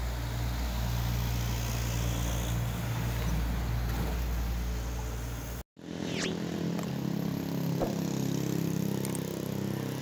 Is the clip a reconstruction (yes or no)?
no